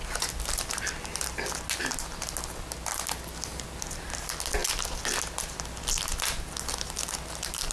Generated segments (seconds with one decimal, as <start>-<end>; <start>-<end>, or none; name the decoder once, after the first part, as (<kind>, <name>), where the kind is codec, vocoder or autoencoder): none